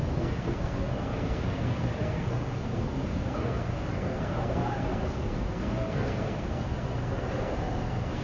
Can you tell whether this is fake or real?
fake